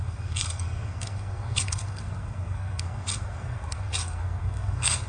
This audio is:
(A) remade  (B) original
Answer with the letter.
A